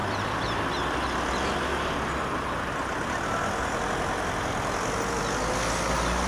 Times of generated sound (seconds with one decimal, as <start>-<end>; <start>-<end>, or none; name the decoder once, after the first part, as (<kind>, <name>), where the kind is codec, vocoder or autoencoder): none

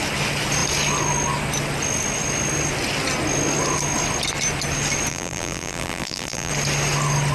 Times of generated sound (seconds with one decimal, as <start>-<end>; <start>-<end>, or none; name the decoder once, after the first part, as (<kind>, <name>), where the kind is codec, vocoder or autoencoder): 5.1-6.5 (vocoder, BigVGAN v2)

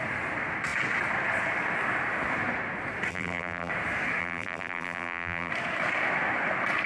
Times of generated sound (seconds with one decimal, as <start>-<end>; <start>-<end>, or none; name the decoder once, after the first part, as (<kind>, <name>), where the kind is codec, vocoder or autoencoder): 3.1-3.7 (vocoder, BigVGAN v2); 4.2-5.5

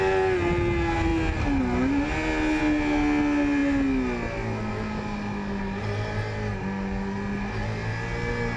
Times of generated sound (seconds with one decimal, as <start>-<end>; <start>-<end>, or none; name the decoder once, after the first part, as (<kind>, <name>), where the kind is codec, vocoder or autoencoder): none